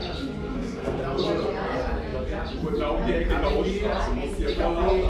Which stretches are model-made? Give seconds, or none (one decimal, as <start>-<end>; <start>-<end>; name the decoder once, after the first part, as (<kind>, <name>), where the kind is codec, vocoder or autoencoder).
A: 0.4-1.0 (codec, SNAC)